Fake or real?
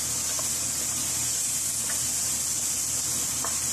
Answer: real